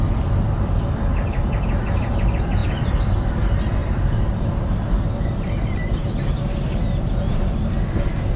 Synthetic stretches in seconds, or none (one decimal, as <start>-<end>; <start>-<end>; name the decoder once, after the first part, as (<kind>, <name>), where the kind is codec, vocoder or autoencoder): 1.1-2.1 (vocoder, BigVGAN v2); 3.8-6.1